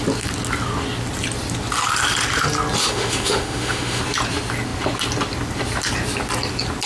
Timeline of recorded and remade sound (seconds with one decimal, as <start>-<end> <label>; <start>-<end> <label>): 0.0-2.8 recorded; 2.8-4.0 remade; 4.0-6.9 recorded